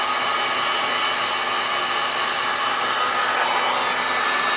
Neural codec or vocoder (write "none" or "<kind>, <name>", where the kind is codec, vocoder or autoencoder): none